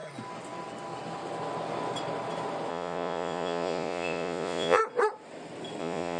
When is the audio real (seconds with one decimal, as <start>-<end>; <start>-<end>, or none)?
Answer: 0.0-2.7; 4.8-5.8